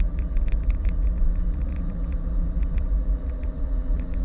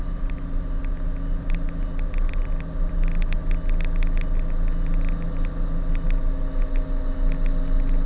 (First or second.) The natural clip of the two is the second